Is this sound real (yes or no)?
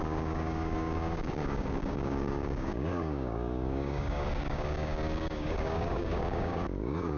no